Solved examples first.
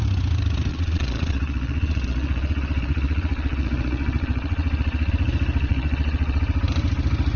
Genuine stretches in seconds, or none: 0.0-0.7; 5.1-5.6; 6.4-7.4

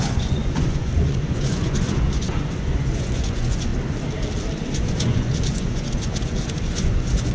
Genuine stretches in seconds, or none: 3.7-4.7

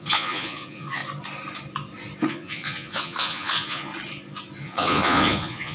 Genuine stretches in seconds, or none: 1.0-2.3; 3.9-4.6

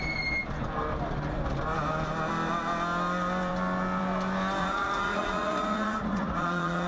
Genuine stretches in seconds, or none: 0.0-4.6

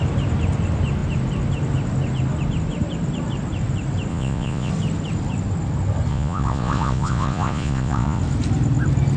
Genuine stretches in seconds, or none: 0.0-4.1; 4.7-6.1; 8.2-9.2

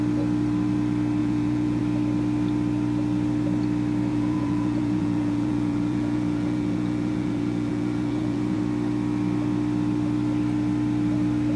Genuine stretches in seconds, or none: 0.0-1.2; 1.8-4.1; 8.6-11.6